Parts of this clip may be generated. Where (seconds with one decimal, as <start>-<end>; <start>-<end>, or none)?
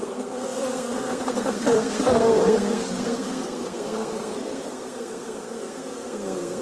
0.0-6.6